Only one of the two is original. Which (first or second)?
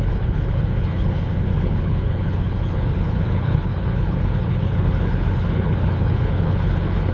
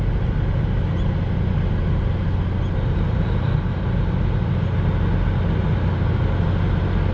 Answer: second